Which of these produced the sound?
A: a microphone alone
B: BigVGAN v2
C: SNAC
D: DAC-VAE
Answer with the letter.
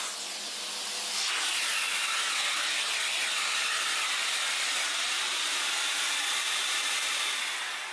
A